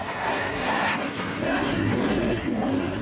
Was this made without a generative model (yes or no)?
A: no